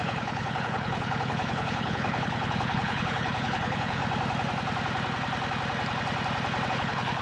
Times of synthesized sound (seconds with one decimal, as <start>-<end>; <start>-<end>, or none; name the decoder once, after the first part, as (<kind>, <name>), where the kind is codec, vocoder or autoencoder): 0.0-4.0 (codec, HILCodec); 6.7-7.2